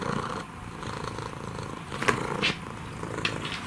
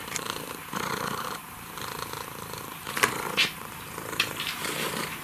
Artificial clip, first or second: second